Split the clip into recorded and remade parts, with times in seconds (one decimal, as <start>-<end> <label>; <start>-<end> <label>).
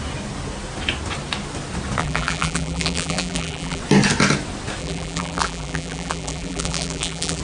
0.0-2.0 recorded; 2.0-3.8 remade; 3.8-4.8 recorded; 4.8-7.4 remade